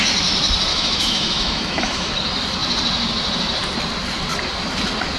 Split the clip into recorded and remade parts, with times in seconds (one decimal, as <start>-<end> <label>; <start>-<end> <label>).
0.0-0.7 recorded; 0.7-2.1 remade; 2.1-5.2 recorded